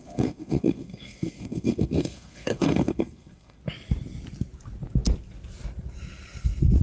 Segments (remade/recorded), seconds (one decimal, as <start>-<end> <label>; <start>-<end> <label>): 0.0-3.6 remade; 3.6-6.8 recorded